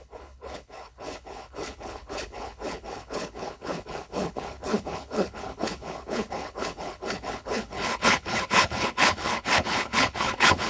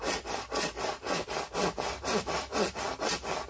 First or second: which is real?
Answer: second